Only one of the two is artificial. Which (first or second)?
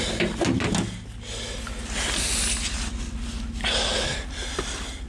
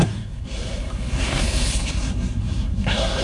second